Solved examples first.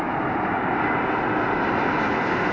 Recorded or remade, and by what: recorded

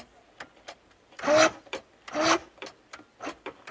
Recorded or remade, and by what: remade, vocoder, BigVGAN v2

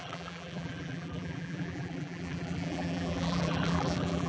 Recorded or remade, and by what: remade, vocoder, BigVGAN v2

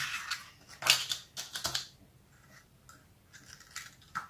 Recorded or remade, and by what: recorded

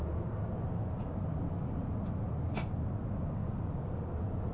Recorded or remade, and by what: recorded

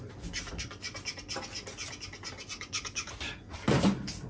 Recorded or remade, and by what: recorded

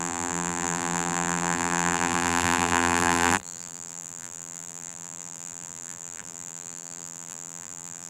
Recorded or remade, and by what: remade, vocoder, BigVGAN v2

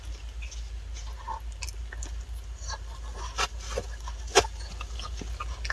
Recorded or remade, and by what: recorded